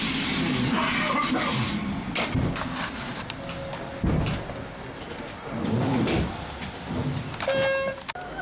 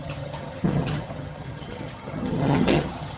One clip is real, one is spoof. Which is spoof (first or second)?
second